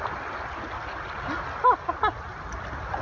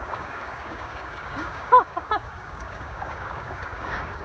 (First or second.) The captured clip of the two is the first